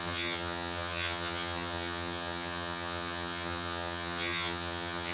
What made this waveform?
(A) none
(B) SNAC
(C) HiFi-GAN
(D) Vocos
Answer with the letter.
C